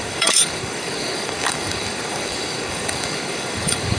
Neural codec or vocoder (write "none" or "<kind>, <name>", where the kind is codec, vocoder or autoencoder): codec, DAC